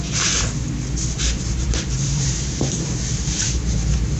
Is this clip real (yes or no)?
no